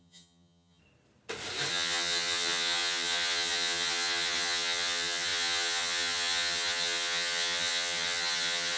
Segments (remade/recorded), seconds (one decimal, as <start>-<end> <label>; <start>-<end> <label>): 0.0-0.8 remade; 0.8-1.7 recorded; 1.7-8.8 remade